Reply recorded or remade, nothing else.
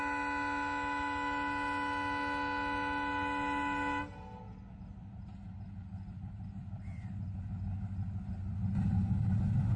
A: recorded